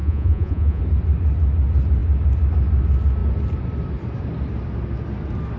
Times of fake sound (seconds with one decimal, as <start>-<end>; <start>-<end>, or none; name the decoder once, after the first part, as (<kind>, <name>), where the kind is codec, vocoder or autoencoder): 0.0-0.8 (vocoder, Vocos)